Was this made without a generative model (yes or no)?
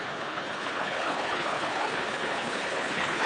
no